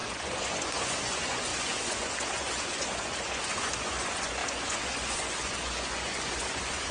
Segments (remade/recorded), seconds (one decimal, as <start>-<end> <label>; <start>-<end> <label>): 0.0-6.9 remade